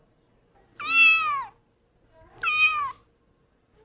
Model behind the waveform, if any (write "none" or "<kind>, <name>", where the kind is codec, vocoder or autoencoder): none